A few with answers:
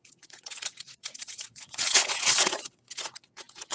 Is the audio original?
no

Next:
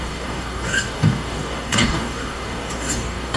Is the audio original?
no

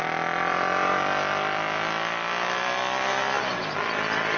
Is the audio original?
yes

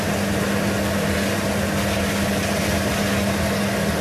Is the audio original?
yes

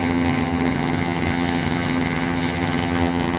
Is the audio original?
no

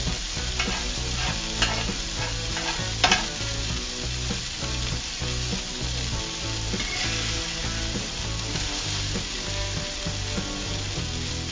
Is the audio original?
yes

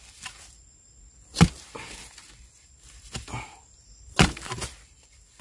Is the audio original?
yes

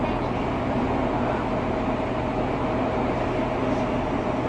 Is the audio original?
yes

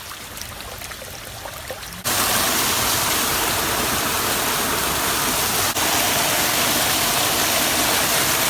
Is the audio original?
yes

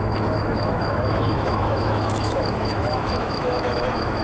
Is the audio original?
no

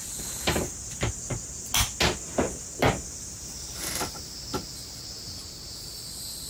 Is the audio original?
yes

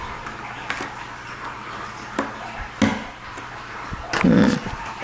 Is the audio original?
yes